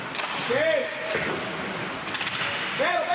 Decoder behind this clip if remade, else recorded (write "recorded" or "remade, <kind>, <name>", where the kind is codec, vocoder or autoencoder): recorded